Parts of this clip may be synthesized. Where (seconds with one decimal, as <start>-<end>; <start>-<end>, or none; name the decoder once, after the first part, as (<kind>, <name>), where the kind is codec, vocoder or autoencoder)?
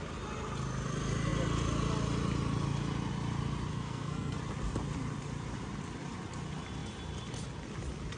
3.7-4.4 (codec, SNAC)